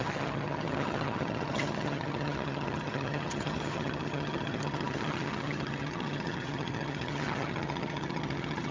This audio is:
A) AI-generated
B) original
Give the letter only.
A